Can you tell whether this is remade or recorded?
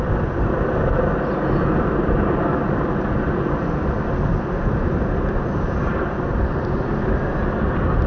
recorded